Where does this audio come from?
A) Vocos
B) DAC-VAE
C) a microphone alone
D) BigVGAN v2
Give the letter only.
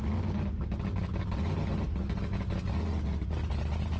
C